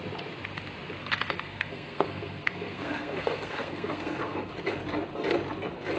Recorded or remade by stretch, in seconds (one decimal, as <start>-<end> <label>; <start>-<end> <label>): 0.0-1.0 recorded; 1.0-4.5 remade; 4.5-6.0 recorded